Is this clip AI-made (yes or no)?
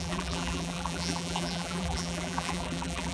yes